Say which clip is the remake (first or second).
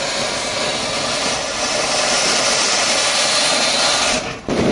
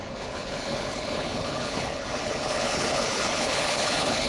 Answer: second